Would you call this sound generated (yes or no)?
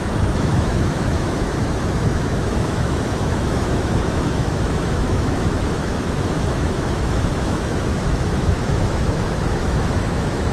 yes